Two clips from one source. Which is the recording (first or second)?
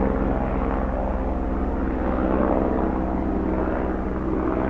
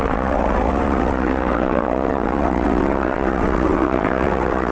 first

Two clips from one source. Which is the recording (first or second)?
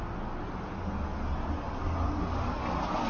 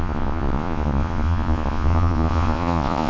first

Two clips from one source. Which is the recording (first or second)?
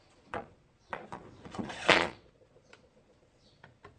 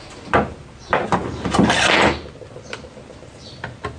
second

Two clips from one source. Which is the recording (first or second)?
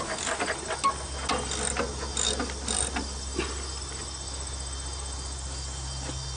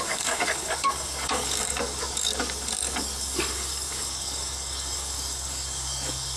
first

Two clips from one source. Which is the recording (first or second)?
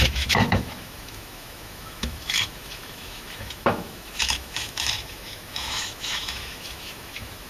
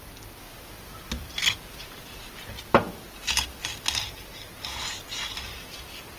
second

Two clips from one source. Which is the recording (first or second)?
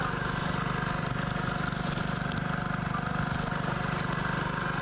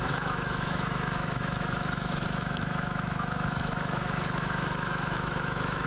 first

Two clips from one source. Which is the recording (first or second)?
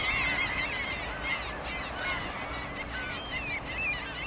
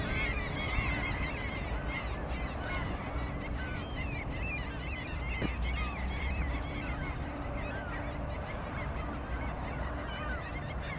first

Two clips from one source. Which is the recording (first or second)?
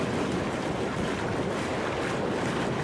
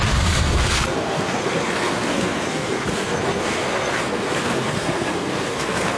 first